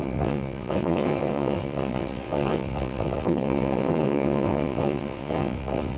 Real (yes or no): no